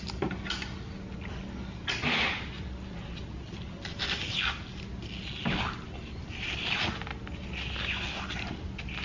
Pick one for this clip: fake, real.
real